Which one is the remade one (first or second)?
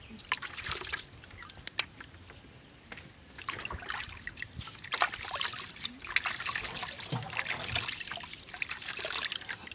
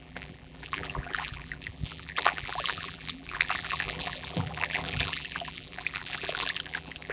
second